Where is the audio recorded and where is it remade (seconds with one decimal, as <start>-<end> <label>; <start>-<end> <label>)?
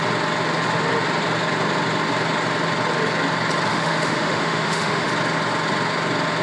0.0-3.7 recorded; 3.7-5.1 remade; 5.1-6.4 recorded